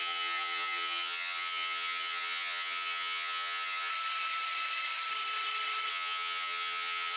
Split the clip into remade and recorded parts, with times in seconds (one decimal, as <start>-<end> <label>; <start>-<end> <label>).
0.0-3.9 remade; 3.9-5.9 recorded; 5.9-7.2 remade